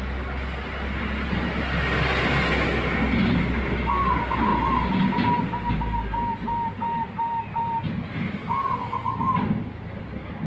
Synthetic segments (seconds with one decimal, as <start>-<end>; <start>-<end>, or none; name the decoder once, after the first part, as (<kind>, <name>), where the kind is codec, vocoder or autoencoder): none